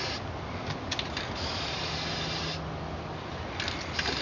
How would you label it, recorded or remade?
recorded